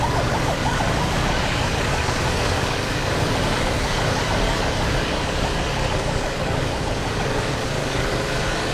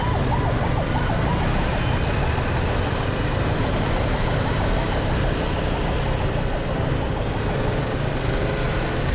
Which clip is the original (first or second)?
second